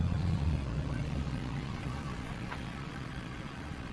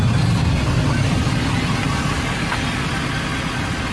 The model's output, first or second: first